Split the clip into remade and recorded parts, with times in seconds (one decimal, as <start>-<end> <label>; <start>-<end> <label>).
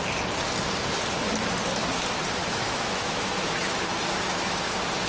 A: 0.0-2.4 recorded; 2.4-4.6 remade; 4.6-5.1 recorded